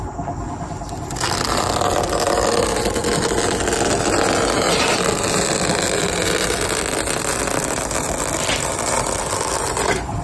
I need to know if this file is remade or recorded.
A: recorded